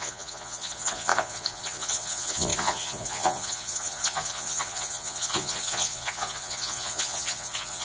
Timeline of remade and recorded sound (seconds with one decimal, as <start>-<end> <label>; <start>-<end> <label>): 0.0-7.8 remade